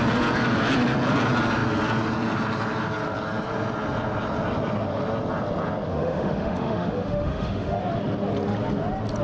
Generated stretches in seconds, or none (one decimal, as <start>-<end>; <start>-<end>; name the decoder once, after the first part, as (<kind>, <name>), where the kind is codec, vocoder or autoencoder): 5.9-7.8 (autoencoder, DAC-VAE)